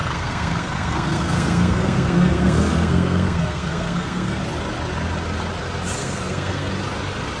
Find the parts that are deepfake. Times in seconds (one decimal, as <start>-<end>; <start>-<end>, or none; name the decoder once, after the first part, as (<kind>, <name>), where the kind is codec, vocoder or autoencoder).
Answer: 0.0-4.4 (codec, SNAC); 6.0-6.7